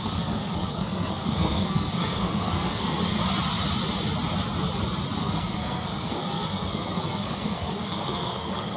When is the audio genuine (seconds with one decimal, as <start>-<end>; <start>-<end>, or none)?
3.2-5.2